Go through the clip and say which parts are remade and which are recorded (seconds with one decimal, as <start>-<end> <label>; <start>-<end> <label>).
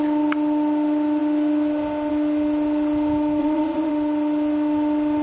0.0-3.4 recorded; 3.4-3.9 remade; 3.9-5.2 recorded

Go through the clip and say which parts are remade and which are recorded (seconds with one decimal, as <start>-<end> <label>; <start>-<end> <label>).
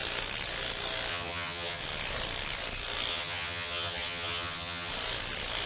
0.0-1.1 recorded; 1.1-1.8 remade; 1.8-3.1 recorded; 3.1-4.9 remade; 4.9-5.7 recorded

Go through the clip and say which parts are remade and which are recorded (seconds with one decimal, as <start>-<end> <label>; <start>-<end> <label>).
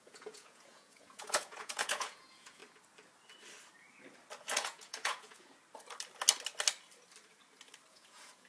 0.0-2.6 remade; 2.6-4.4 recorded; 4.4-5.5 remade; 5.5-7.9 recorded; 7.9-8.5 remade